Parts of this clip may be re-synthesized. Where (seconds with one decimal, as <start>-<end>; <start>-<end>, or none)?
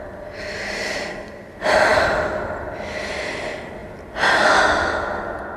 none